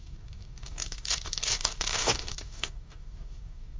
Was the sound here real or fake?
fake